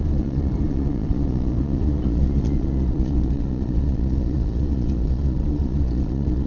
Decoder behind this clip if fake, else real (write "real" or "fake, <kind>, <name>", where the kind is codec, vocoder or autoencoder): fake, vocoder, Vocos